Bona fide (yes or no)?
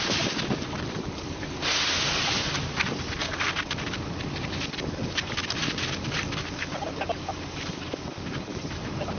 yes